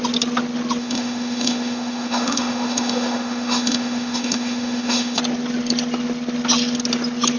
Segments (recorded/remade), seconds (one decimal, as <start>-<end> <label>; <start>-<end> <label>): 0.0-0.8 recorded; 0.8-5.2 remade; 5.2-7.4 recorded